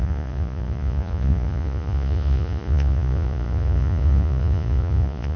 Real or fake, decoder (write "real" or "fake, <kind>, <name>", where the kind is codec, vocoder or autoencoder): fake, vocoder, Vocos